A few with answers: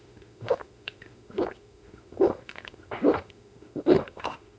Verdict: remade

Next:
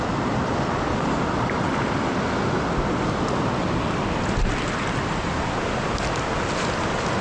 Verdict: recorded